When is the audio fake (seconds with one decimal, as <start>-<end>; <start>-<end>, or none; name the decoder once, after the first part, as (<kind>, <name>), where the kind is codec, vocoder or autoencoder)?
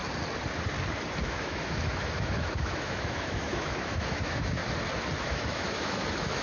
1.2-4.6 (autoencoder, DAC-VAE); 5.2-6.4